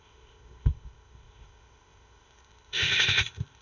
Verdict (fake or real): fake